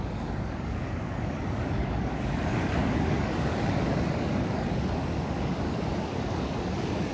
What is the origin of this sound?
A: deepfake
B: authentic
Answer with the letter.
A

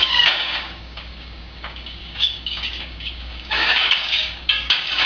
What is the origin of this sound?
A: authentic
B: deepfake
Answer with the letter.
B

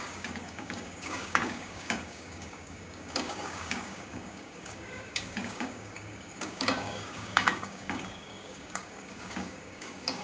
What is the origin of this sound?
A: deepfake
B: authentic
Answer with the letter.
A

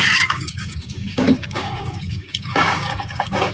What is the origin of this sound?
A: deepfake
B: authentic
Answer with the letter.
A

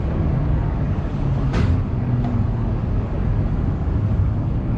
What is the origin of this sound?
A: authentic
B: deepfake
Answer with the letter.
B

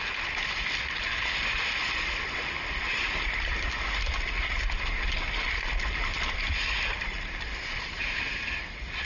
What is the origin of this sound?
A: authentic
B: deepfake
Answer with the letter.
A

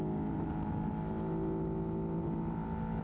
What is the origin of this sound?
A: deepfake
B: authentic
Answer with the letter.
B